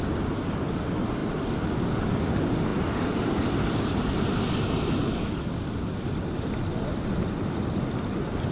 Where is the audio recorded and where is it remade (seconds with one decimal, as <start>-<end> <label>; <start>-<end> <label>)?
0.0-8.5 recorded